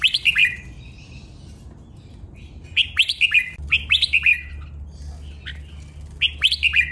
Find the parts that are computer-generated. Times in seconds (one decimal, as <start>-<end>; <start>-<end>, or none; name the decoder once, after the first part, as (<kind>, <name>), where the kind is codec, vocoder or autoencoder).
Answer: none